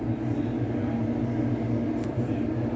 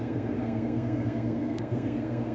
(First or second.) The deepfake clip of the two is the second